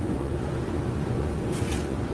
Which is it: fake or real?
fake